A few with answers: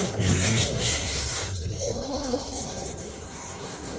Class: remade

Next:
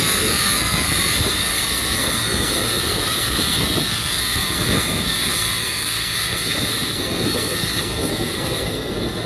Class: remade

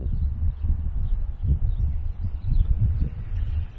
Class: remade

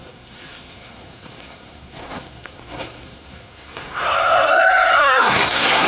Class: remade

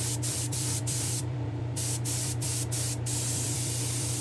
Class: remade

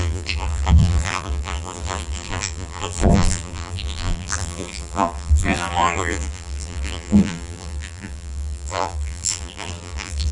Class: remade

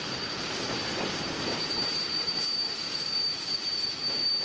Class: remade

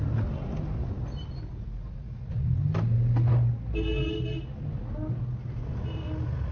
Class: recorded